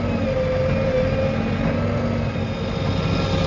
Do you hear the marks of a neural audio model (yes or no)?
no